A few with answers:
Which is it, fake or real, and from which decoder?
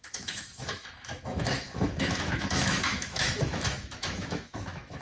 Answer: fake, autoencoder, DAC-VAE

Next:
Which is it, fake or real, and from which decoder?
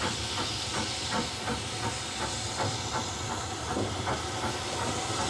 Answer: real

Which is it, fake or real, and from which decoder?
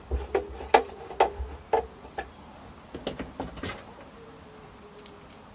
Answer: real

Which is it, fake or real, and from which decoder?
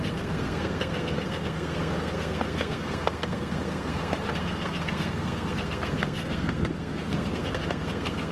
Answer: fake, codec, SNAC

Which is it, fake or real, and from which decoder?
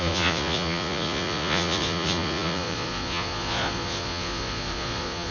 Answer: fake, vocoder, Vocos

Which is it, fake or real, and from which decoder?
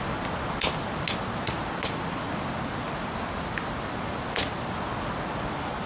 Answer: real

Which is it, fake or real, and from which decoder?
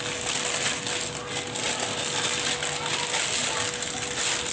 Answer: real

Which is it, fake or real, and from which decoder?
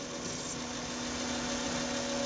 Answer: real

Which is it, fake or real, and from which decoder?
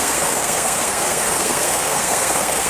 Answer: fake, codec, SNAC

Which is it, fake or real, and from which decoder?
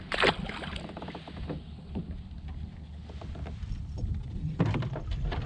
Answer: real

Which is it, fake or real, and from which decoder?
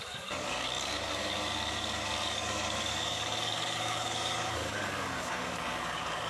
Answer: fake, codec, DAC